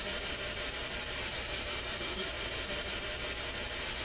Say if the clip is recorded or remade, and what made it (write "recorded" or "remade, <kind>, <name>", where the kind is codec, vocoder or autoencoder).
remade, vocoder, BigVGAN v2